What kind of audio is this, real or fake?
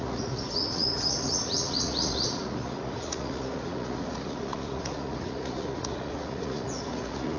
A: fake